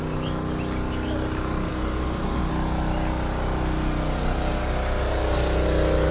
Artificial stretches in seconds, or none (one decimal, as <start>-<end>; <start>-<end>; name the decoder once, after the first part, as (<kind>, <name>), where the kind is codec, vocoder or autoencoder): 1.7-2.5 (codec, SNAC)